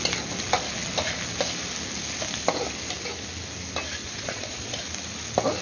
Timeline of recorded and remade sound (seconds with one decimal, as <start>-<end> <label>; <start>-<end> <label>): 0.0-4.0 recorded; 4.0-4.8 remade; 4.8-5.6 recorded